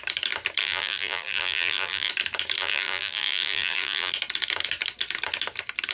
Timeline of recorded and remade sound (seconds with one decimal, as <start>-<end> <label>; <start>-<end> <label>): 0.0-0.6 recorded; 0.6-2.1 remade; 2.1-2.6 recorded; 2.6-4.1 remade; 4.1-5.9 recorded